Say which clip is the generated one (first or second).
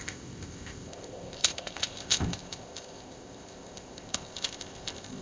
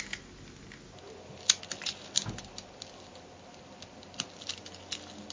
first